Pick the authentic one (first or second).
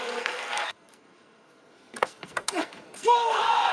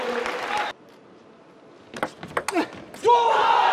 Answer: second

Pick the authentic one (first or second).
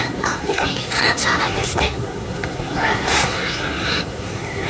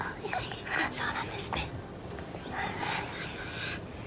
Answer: second